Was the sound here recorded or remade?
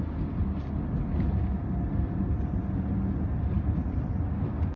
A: recorded